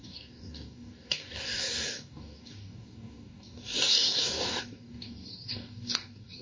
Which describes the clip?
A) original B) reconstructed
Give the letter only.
B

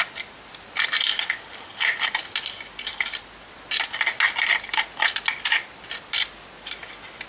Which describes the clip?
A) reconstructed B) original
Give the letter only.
B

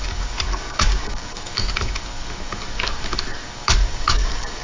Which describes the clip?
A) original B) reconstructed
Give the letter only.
B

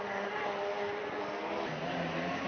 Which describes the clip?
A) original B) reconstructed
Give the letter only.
A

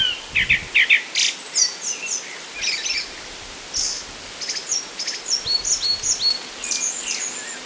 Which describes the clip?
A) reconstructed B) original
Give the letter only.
B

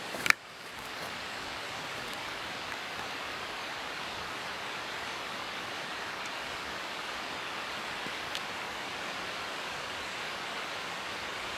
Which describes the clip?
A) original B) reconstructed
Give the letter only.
B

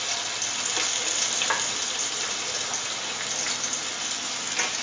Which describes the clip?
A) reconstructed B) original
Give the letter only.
B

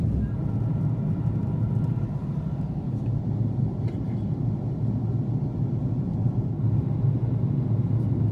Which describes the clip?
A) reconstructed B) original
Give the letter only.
B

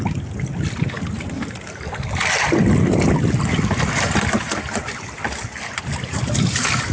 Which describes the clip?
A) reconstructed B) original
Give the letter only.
B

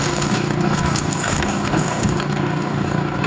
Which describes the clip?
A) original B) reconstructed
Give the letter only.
B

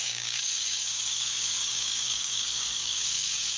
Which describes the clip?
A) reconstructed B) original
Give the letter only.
A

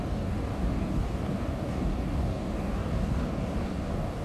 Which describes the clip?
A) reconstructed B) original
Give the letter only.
A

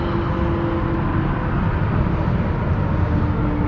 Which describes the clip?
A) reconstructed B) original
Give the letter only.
B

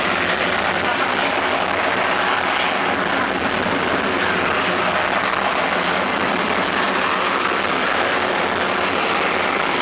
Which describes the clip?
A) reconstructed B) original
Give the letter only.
B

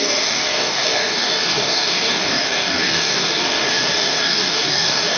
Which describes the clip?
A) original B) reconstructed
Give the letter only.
B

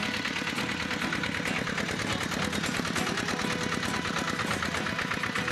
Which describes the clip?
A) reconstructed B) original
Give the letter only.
B